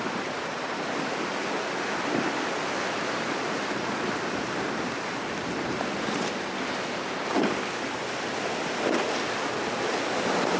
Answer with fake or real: real